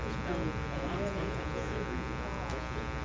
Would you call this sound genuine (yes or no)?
yes